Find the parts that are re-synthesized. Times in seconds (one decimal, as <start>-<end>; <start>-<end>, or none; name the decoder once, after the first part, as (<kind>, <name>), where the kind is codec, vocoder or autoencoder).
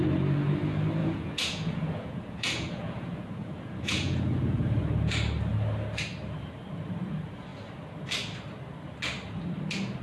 1.0-4.8 (vocoder, Vocos)